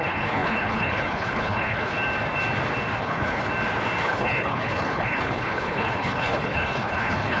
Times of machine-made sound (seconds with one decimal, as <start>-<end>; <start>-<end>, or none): 0.0-1.9; 3.0-3.5; 4.0-7.4